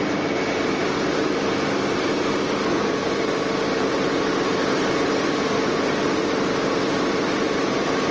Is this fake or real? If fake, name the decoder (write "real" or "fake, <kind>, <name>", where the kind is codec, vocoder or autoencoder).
real